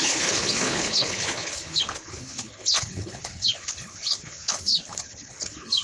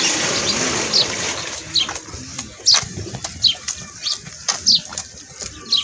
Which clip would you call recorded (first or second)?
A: second